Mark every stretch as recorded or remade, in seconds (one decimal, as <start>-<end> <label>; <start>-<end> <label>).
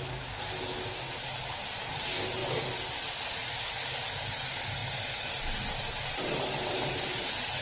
0.0-4.8 recorded; 4.8-7.6 remade